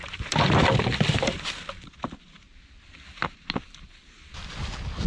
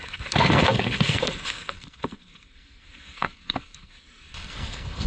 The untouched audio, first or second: first